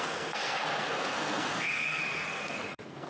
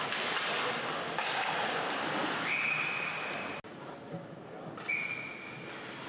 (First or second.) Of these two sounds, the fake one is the first